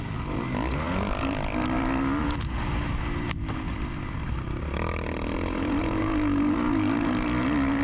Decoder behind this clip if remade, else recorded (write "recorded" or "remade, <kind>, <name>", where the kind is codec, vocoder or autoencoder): recorded